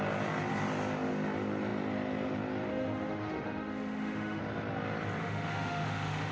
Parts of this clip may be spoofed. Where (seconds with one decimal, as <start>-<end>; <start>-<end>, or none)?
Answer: 2.7-4.4; 5.2-6.3